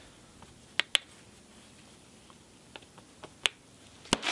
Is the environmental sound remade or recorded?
recorded